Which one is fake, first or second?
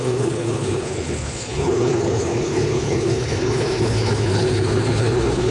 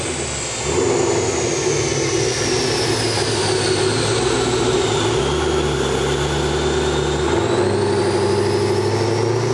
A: first